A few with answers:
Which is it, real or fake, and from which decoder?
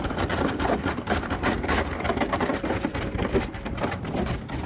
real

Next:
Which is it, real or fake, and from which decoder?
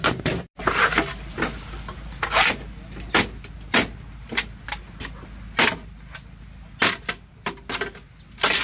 real